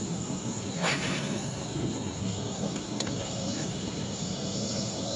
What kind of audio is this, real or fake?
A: fake